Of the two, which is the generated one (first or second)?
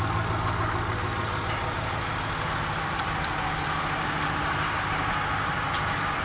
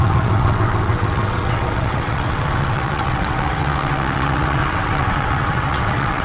second